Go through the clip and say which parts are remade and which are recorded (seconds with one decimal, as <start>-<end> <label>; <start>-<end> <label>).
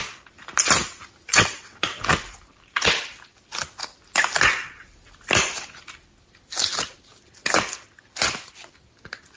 0.0-1.3 recorded; 1.3-2.0 remade; 2.0-9.4 recorded